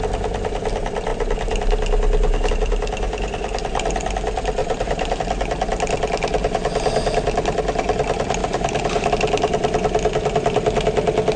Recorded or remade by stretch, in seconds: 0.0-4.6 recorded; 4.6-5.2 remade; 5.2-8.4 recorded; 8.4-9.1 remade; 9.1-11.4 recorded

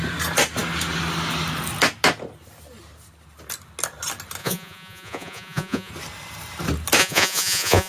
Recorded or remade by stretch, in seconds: 0.0-4.4 recorded; 4.4-5.9 remade; 5.9-7.0 recorded; 7.0-7.9 remade

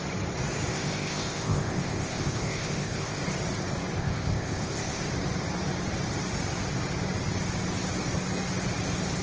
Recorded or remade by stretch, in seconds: 0.0-0.7 recorded; 0.7-3.2 remade; 3.2-4.0 recorded; 4.0-5.0 remade; 5.0-9.2 recorded